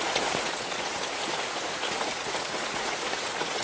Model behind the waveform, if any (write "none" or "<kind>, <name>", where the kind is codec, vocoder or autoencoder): vocoder, Vocos